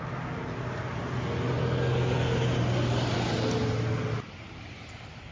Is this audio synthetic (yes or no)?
no